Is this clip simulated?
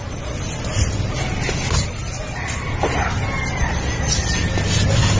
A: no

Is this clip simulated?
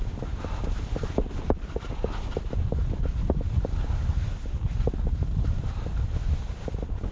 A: no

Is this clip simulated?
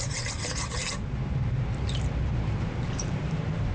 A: yes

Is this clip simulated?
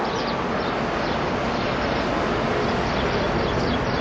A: no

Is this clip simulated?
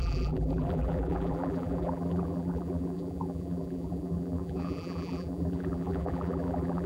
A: yes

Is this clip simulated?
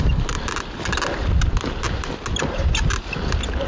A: no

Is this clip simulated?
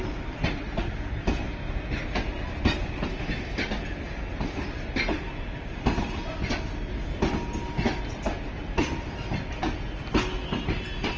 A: no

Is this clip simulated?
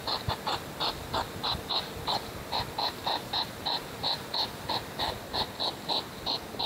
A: no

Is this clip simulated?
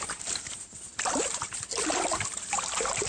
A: yes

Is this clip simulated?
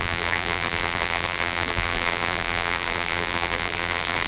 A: yes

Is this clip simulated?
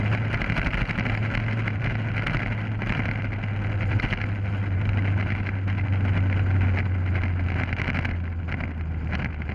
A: no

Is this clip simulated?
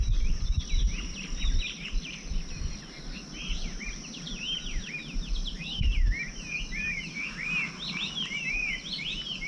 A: yes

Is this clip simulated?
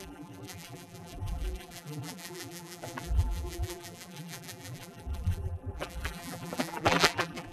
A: yes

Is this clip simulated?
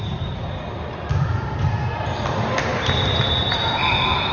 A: no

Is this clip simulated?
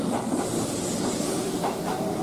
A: yes